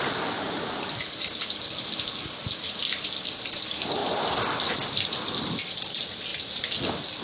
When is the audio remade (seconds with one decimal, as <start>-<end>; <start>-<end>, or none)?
none